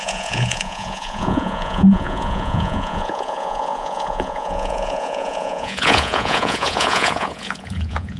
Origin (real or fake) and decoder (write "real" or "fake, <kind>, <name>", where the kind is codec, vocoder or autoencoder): fake, vocoder, Vocos